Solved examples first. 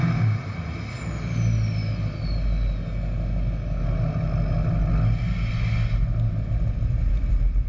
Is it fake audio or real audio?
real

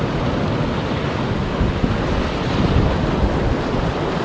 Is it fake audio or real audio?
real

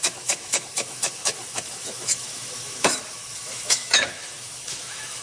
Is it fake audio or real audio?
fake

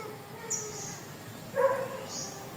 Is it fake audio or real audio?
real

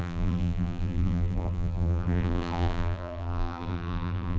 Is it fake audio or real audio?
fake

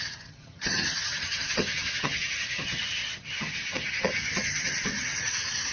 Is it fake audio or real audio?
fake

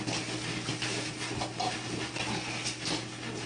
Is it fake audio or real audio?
real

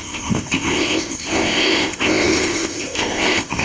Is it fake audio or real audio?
fake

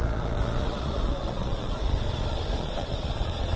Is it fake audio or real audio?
fake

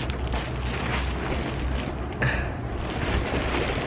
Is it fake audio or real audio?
real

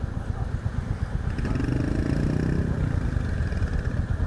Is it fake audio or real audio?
real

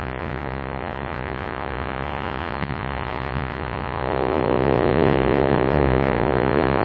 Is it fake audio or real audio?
fake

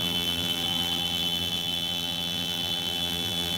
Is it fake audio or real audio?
fake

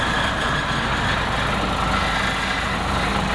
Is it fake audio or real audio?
real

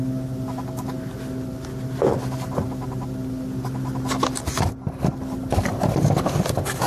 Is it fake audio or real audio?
real